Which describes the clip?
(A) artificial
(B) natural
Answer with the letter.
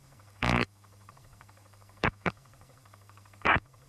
A